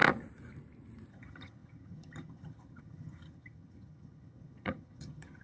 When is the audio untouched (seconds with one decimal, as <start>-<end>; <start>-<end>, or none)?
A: 0.0-1.1